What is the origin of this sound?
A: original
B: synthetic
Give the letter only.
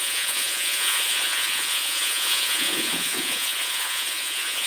B